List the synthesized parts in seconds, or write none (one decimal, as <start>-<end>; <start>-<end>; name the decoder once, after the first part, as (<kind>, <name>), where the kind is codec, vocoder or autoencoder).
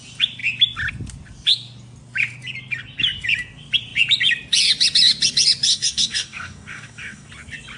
5.7-7.3 (codec, DAC)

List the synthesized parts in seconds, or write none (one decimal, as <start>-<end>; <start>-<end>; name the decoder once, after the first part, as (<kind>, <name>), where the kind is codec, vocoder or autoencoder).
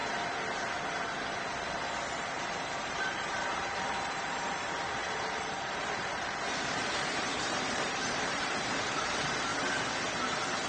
2.4-9.5 (vocoder, BigVGAN v2)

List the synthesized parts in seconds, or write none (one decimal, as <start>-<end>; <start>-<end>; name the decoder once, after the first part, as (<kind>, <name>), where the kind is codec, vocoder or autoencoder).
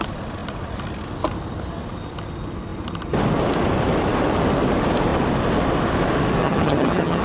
6.4-7.2 (vocoder, HiFi-GAN)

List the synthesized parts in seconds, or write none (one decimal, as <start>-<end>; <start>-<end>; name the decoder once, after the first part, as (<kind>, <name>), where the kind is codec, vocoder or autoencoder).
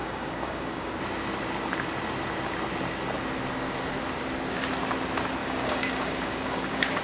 0.0-0.9 (codec, DAC); 5.4-7.0